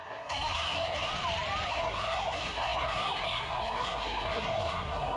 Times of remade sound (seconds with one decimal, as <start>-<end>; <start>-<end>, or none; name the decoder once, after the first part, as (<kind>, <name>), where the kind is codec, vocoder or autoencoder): 0.0-1.1 (codec, SNAC); 1.7-5.2